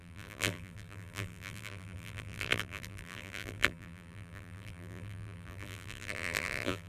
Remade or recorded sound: remade